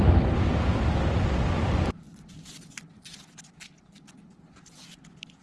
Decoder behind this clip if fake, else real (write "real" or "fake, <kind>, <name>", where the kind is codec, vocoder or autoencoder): real